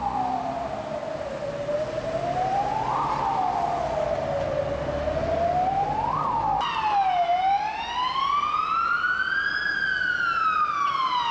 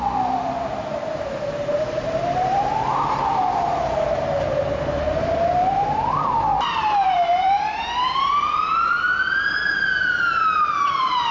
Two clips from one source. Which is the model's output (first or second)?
second